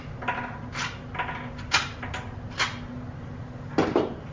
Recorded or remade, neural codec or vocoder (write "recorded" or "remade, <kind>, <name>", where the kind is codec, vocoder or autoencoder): recorded